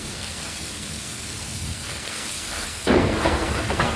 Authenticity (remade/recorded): remade